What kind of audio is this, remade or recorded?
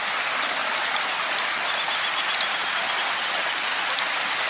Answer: recorded